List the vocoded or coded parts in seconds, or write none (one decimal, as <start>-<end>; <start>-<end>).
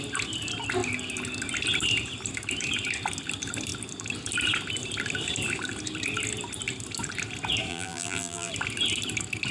7.7-8.5